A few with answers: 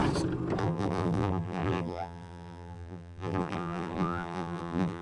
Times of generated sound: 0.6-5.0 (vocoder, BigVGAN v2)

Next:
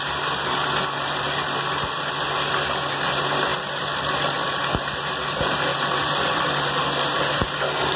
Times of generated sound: 3.5-4.1 (vocoder, BigVGAN v2); 5.7-7.2

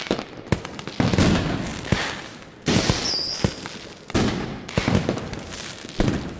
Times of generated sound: none

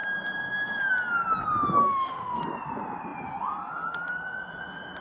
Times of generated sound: 1.8-2.4 (autoencoder, DAC-VAE)

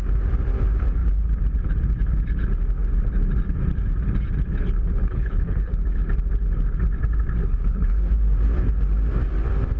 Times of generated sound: 5.0-5.7 (codec, HILCodec); 7.4-8.1

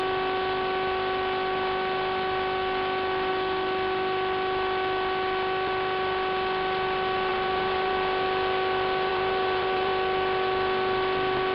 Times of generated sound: 7.3-7.9 (vocoder, BigVGAN v2); 9.1-9.9

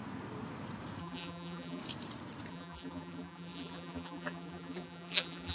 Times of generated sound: 1.0-1.8 (vocoder, BigVGAN v2); 2.5-5.5